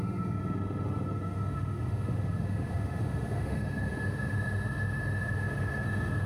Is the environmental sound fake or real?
fake